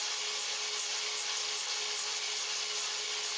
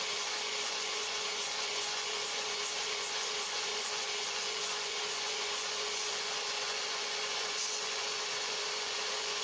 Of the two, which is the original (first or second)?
first